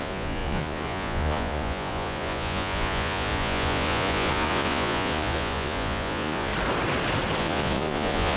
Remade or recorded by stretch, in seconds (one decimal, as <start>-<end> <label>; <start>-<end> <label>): 0.0-6.5 remade; 6.5-7.4 recorded; 7.4-8.4 remade